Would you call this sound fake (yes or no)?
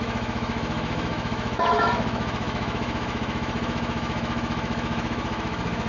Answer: yes